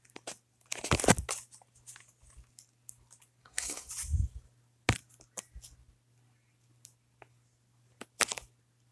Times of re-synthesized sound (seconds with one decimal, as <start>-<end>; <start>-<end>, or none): 3.4-3.9